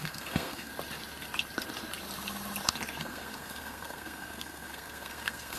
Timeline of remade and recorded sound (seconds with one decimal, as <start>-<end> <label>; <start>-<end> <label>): 0.0-0.7 remade; 0.7-3.0 recorded; 3.0-5.6 remade